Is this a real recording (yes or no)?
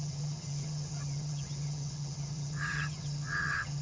no